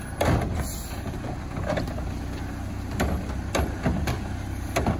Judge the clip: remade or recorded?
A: recorded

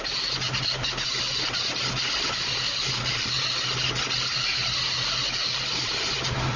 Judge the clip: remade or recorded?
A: recorded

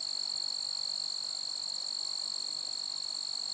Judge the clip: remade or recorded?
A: recorded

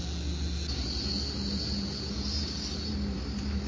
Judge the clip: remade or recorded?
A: recorded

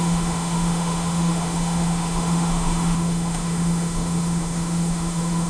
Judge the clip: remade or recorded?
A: remade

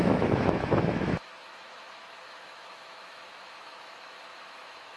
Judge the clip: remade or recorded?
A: remade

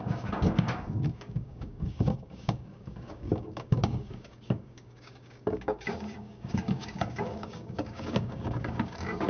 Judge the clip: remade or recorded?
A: remade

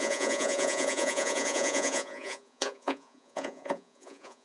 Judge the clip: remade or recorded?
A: remade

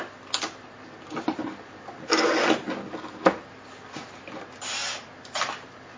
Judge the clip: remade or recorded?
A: recorded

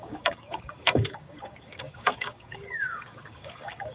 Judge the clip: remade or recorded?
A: remade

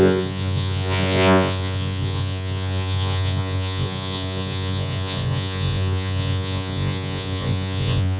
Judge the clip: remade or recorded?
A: remade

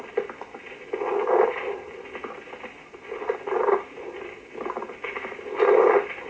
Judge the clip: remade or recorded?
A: recorded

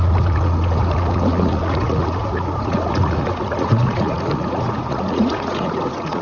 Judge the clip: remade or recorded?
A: remade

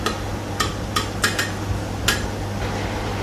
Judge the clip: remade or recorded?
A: recorded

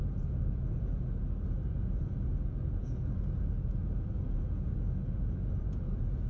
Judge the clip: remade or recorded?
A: remade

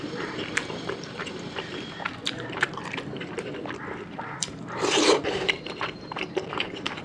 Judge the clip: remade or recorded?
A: remade